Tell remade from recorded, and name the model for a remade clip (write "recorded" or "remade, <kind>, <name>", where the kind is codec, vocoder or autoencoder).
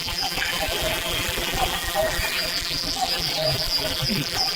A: remade, vocoder, BigVGAN v2